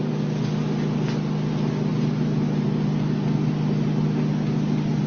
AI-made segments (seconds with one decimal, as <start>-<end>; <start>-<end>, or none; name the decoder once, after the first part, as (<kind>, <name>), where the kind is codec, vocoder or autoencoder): none